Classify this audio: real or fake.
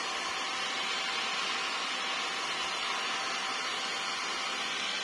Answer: real